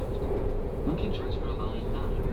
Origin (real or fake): fake